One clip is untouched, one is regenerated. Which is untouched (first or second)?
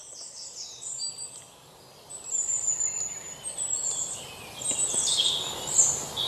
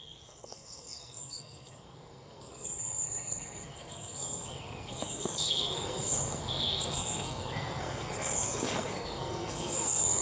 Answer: first